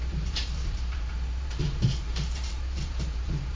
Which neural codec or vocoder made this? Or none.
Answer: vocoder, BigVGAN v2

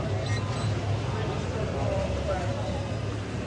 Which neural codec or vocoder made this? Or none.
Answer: none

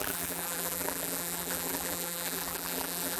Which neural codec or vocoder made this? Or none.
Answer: vocoder, BigVGAN v2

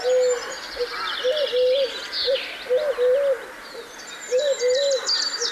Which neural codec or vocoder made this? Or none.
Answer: none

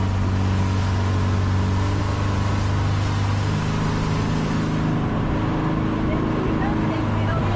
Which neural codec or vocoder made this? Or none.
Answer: none